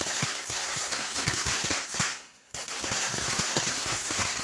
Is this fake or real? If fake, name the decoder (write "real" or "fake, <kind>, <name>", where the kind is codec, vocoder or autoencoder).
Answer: fake, codec, SNAC